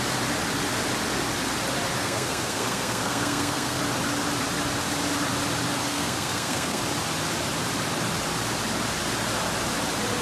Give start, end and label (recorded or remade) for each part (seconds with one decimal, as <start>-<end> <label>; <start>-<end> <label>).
0.0-2.0 recorded; 2.0-3.8 remade; 3.8-5.9 recorded; 5.9-6.8 remade; 6.8-10.2 recorded